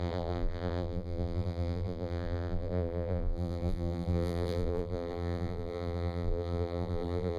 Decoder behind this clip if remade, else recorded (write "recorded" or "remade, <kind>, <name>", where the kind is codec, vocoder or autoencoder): remade, vocoder, BigVGAN v2